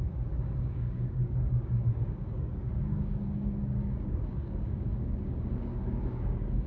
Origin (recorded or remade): remade